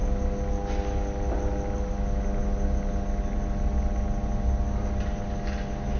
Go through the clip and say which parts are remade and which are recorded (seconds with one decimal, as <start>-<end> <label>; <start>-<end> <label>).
0.0-6.0 recorded